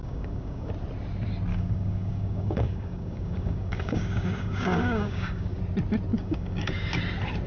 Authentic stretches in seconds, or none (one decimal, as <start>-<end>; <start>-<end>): 0.7-1.5; 5.6-6.1; 7.0-7.5